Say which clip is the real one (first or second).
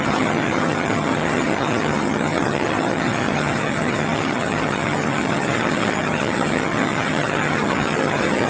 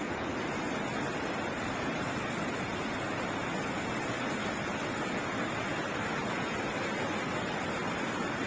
second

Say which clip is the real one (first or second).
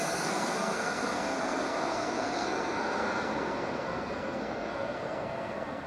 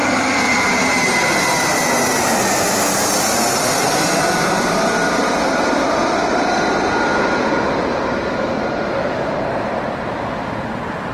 second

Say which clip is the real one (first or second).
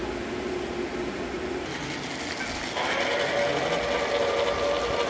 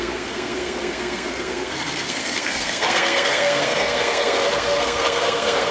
first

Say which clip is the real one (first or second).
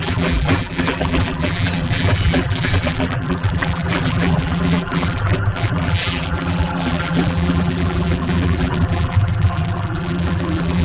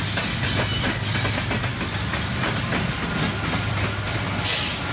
second